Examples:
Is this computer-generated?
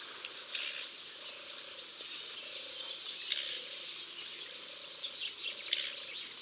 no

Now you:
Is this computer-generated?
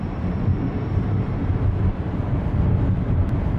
yes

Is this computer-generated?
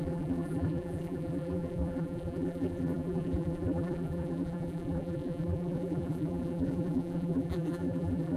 yes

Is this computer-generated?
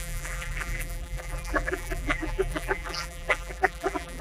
yes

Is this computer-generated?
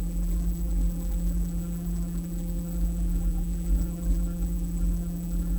yes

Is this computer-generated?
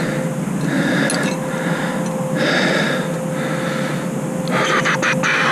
no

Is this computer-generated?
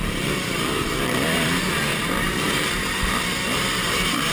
yes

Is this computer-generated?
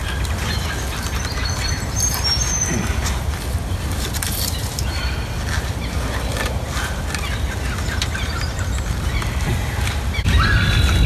no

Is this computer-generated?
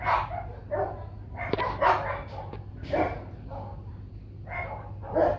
no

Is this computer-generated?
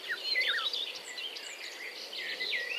yes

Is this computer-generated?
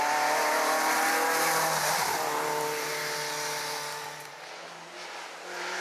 no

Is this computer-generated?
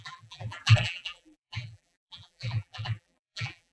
yes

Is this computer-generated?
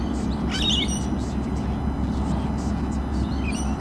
no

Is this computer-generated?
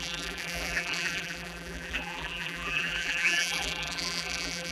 yes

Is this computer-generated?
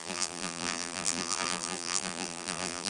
yes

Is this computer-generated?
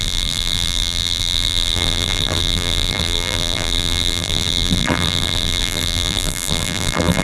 yes